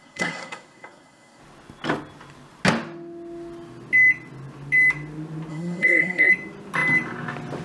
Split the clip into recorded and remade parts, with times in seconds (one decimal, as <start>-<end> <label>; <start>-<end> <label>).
0.0-1.4 remade; 1.4-5.5 recorded; 5.5-6.3 remade; 6.3-7.6 recorded